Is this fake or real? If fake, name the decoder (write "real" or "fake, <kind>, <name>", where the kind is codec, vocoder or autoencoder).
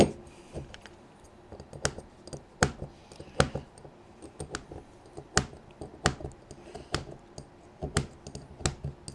real